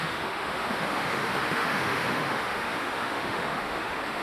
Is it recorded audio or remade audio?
remade